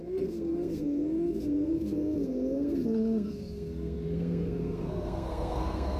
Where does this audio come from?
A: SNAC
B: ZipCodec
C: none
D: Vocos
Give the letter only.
A